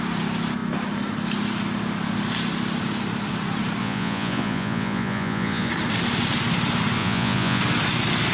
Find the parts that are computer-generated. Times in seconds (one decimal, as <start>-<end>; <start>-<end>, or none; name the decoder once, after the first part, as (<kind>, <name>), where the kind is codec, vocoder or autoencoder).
3.8-5.7 (vocoder, Vocos); 7.0-7.6